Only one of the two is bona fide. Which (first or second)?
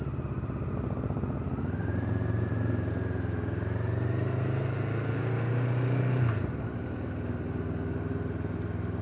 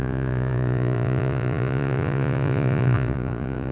first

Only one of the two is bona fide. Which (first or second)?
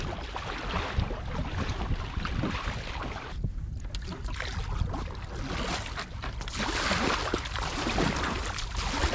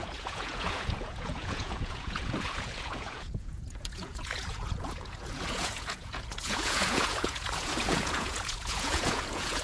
first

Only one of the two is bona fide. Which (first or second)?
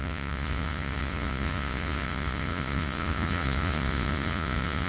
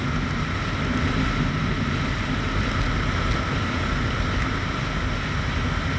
second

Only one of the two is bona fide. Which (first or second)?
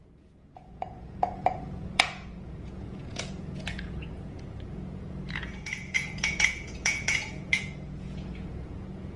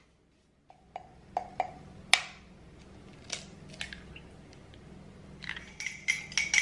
second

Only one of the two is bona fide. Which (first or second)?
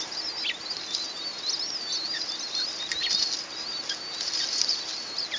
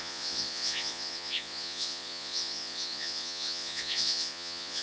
first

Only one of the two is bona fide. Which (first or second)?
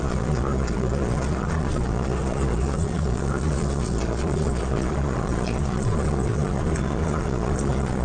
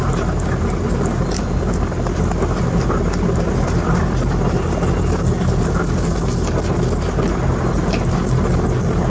second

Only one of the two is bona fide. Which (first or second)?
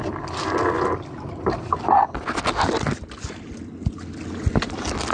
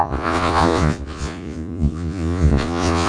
first